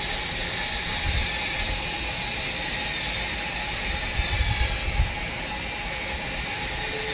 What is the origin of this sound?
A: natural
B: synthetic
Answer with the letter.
A